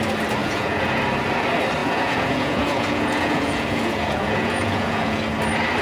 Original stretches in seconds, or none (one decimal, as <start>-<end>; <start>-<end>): 0.0-0.4; 1.0-1.8; 5.2-5.8